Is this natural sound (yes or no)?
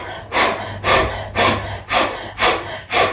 yes